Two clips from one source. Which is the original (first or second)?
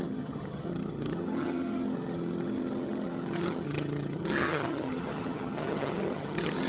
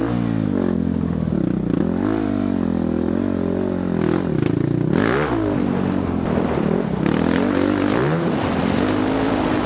second